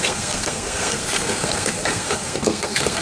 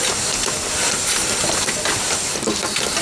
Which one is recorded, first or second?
second